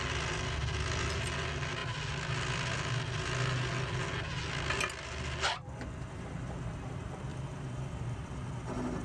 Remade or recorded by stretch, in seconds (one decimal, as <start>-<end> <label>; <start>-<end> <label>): 0.0-7.3 recorded; 7.3-8.5 remade; 8.5-9.0 recorded